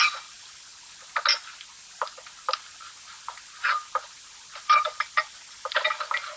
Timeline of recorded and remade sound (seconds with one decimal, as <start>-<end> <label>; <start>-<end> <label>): 0.0-0.7 remade; 0.7-4.5 recorded; 4.5-6.4 remade